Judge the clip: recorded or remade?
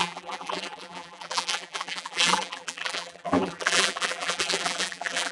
remade